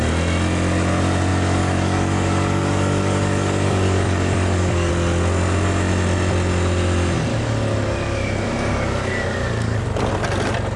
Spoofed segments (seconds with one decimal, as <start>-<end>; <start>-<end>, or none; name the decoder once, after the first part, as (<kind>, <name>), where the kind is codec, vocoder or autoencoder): 1.3-4.9 (codec, DAC); 7.3-10.1